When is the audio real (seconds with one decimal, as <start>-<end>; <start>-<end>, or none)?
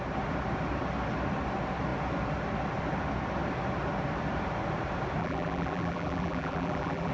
0.0-5.2